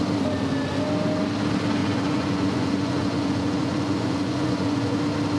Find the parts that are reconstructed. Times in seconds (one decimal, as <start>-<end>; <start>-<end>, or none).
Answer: 1.8-5.0